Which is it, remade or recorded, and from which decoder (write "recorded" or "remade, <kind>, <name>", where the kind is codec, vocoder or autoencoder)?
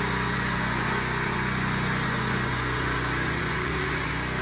remade, vocoder, Vocos